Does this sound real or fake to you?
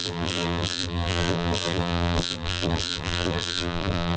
fake